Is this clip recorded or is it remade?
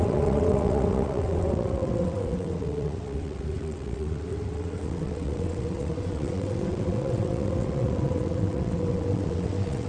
remade